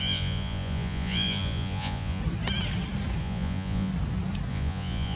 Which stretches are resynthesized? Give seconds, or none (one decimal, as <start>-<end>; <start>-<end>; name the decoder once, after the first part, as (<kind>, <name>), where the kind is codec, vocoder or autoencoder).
0.0-2.2 (vocoder, Vocos); 3.2-3.9; 4.5-5.2

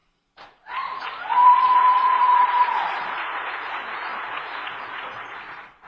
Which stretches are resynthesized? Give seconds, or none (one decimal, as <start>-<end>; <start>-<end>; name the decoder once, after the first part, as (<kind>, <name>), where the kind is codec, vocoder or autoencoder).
0.0-5.9 (vocoder, Vocos)

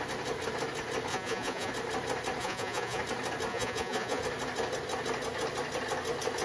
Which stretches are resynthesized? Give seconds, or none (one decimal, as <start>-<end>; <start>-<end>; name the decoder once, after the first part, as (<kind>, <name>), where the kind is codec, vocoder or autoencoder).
1.1-1.7 (vocoder, Vocos); 2.4-3.0; 3.5-4.2